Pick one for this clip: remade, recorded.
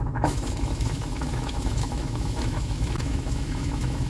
remade